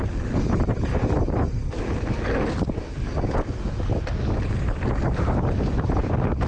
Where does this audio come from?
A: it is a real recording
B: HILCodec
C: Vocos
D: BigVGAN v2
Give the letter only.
A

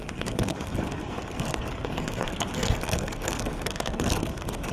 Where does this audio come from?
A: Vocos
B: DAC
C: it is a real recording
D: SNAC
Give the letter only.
D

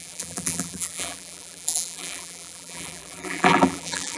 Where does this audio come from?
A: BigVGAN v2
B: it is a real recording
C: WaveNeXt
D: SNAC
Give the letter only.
A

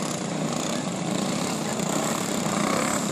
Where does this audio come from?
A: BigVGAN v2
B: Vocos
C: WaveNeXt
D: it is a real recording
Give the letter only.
A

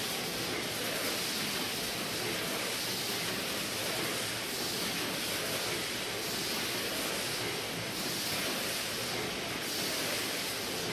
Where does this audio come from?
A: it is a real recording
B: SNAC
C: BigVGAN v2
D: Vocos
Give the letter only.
A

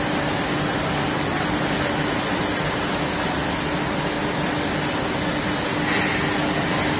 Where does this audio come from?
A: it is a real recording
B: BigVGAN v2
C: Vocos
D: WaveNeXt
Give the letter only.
A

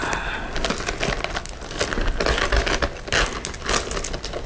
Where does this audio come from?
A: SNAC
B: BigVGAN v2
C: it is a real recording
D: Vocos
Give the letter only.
C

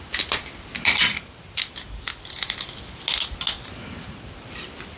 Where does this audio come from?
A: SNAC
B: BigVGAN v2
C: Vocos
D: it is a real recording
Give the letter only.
D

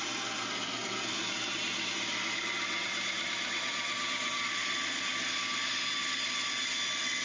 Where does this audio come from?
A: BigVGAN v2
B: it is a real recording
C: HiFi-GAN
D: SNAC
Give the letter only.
B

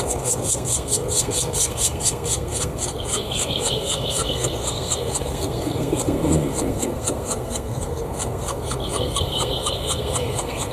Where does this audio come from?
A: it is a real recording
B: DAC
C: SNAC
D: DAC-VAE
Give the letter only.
C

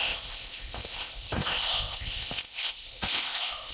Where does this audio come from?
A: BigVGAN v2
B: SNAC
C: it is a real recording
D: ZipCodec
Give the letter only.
D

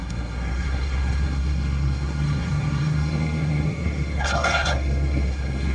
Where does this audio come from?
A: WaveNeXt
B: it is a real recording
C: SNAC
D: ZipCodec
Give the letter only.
C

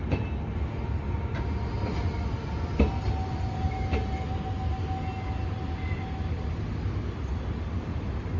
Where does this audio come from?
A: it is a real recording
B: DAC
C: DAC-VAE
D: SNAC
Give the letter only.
A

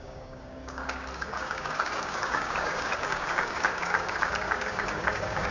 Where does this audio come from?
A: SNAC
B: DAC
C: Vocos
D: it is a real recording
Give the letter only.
B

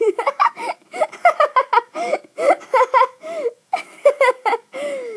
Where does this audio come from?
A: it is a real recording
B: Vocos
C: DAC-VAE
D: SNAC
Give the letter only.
C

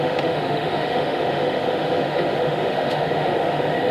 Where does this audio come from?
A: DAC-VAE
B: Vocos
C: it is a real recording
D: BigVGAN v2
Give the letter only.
A